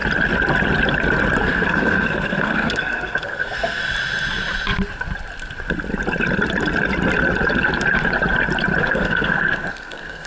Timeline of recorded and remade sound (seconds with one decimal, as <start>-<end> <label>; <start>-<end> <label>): 0.0-1.4 recorded; 1.4-3.8 remade; 3.8-8.8 recorded; 8.8-10.3 remade